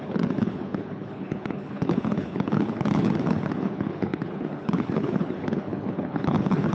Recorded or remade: remade